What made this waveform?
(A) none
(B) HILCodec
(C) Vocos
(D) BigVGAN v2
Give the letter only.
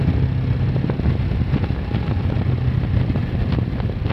A